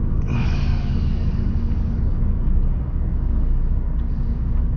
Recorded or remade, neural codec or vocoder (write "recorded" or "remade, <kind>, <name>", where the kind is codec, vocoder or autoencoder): remade, codec, DAC